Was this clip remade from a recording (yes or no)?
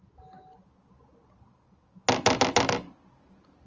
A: no